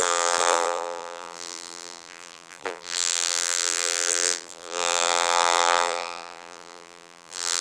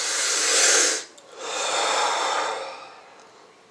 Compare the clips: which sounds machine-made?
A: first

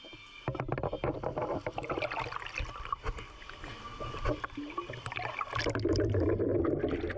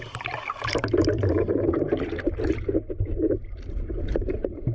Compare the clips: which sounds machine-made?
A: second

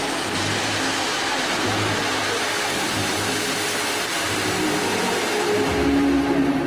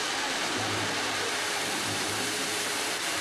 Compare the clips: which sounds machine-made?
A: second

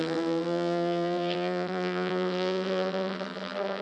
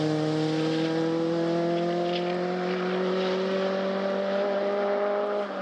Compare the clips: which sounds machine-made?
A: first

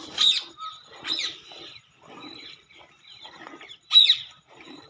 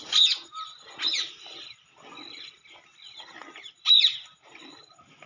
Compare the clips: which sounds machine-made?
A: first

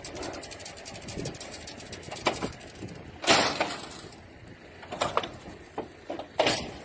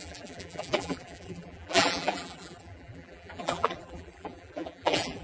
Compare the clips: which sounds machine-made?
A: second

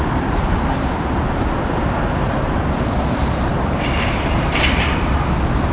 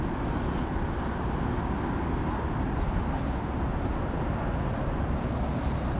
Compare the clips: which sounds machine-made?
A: first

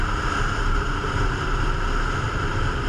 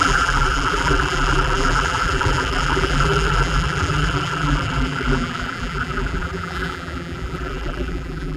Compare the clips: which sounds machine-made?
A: second